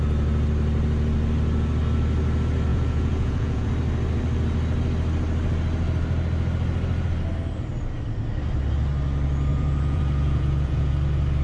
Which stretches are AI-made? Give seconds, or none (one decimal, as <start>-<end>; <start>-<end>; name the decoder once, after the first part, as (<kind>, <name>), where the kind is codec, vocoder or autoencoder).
2.7-3.7 (vocoder, Vocos); 9.5-10.9